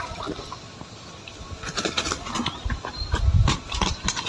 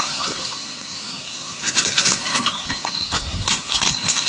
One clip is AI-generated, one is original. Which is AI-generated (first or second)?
second